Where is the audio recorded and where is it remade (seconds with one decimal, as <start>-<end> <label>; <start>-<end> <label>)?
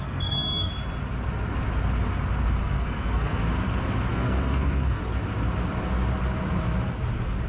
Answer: 0.0-0.7 remade; 0.7-2.6 recorded; 2.6-3.4 remade; 3.4-4.1 recorded; 4.1-5.0 remade; 5.0-7.5 recorded